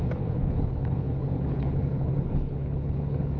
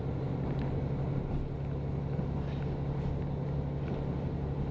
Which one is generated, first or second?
first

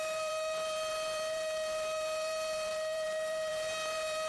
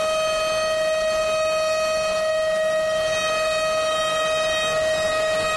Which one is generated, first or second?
first